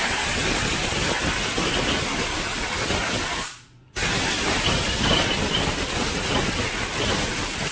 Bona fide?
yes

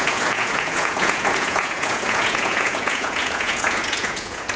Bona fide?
no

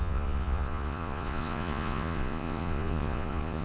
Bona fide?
no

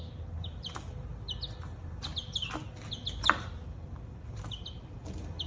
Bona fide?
yes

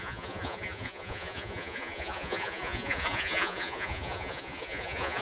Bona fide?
no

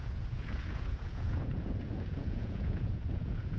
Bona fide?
no